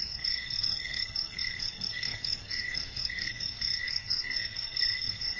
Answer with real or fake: fake